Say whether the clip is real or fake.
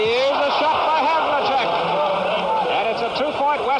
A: real